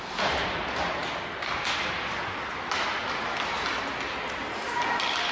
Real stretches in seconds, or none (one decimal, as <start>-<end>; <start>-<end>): 0.0-5.3